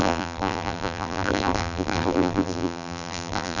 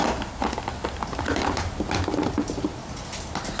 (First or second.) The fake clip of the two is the first